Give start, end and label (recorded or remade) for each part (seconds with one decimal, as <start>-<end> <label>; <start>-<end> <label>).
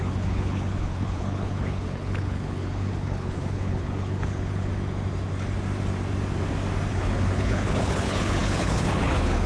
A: 0.0-4.7 remade; 4.7-6.9 recorded; 6.9-9.5 remade